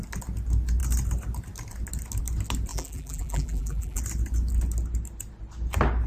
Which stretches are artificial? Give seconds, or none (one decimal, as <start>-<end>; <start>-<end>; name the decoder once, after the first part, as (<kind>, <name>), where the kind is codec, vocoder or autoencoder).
2.7-4.0 (vocoder, BigVGAN v2)